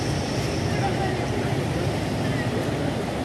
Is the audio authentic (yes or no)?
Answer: yes